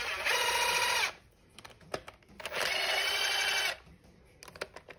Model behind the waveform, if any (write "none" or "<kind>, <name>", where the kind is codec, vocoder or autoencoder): none